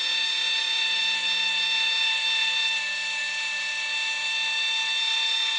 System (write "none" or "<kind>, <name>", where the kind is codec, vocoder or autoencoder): none